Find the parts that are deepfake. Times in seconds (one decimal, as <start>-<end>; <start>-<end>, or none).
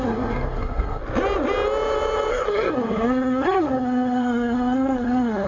0.0-1.0; 2.3-5.5